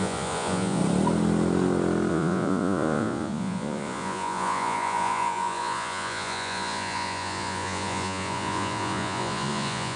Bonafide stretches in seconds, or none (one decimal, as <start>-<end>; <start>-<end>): 0.8-2.1